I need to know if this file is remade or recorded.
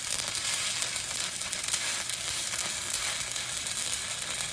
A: recorded